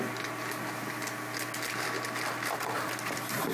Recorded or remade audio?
recorded